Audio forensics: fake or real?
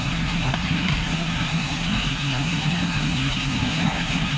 fake